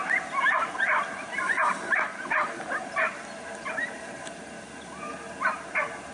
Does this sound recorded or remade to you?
recorded